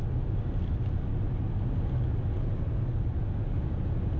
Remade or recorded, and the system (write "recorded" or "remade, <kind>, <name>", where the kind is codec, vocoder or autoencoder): recorded